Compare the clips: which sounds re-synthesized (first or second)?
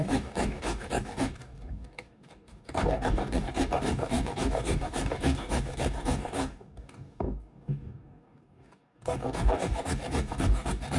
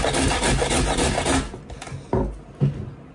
first